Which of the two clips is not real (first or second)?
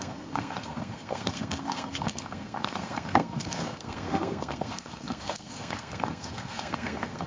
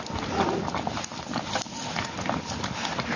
first